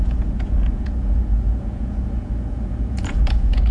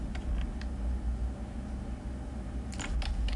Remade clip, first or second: first